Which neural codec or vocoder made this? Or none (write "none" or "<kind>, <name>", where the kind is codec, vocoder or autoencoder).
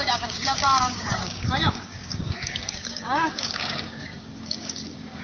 codec, DAC